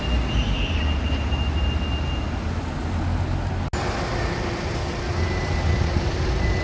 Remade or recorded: recorded